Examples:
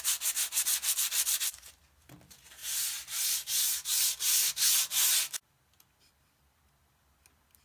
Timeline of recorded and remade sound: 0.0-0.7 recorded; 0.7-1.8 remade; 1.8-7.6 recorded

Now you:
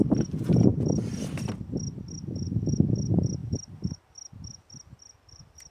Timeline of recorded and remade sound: 0.0-5.7 recorded

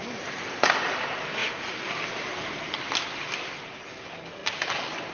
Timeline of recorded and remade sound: 0.0-5.1 recorded

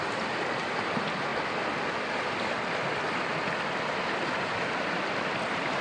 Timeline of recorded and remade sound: 0.0-5.8 recorded

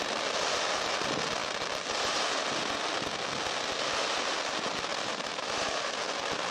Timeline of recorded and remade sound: 0.0-4.9 recorded; 4.9-5.6 remade; 5.6-6.5 recorded

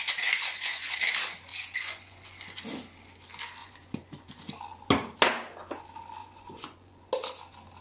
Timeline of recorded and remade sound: 0.0-0.5 recorded; 0.5-1.0 remade; 1.0-1.5 recorded; 1.5-2.6 remade; 2.6-3.6 recorded; 3.6-4.3 remade; 4.3-6.2 recorded; 6.2-7.1 remade; 7.1-7.8 recorded

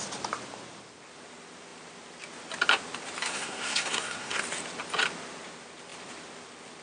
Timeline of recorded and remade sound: 0.0-3.3 recorded; 3.3-4.4 remade; 4.4-6.8 recorded